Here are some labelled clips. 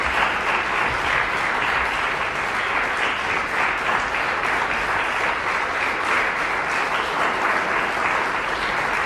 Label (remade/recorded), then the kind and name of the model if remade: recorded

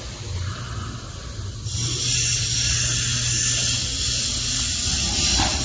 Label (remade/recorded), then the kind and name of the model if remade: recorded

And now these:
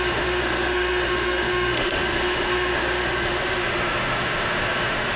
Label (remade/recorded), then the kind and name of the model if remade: remade, autoencoder, DAC-VAE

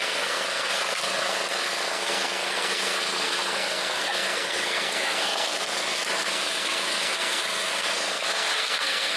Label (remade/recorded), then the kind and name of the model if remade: remade, codec, SNAC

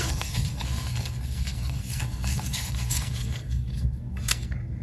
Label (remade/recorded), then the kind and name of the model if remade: remade, codec, SNAC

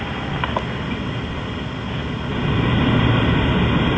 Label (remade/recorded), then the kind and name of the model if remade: recorded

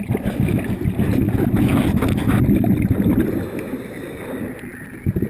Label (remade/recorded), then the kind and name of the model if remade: recorded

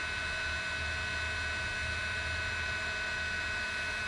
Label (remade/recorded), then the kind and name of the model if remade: recorded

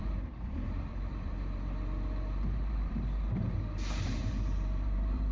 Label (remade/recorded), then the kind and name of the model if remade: remade, vocoder, BigVGAN v2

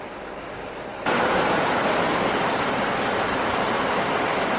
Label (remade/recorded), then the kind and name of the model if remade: recorded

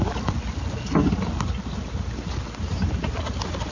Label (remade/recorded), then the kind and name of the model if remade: recorded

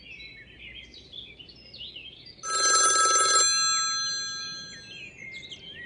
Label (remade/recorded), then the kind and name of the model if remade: recorded